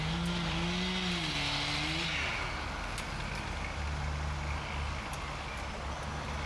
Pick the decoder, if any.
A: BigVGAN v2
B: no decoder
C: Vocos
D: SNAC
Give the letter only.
B